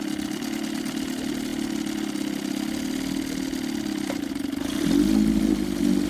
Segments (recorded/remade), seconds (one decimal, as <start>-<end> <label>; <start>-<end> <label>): 0.0-6.1 recorded